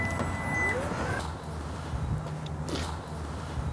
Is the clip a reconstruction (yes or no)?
no